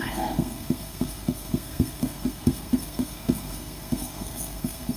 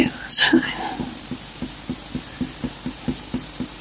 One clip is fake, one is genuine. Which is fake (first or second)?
first